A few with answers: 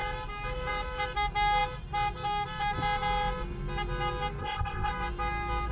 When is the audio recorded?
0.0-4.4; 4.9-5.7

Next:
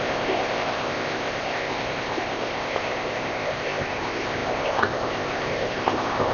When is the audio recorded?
none